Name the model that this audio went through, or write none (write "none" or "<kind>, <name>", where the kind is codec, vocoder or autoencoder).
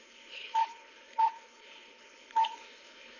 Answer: codec, HILCodec